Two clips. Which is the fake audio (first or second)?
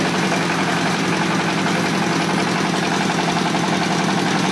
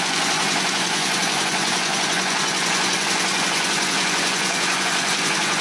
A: second